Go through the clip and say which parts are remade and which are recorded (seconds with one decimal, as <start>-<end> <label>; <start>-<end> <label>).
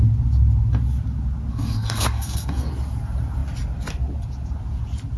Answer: 0.0-1.5 recorded; 1.5-2.7 remade; 2.7-5.2 recorded